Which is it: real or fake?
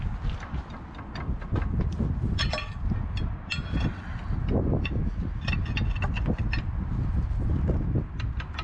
real